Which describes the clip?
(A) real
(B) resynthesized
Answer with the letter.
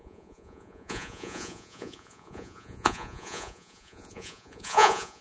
B